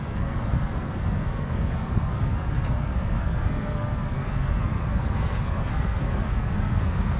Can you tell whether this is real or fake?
fake